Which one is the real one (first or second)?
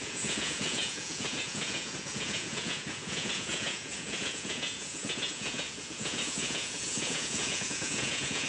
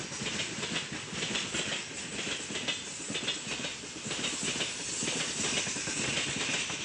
second